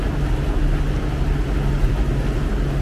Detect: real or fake real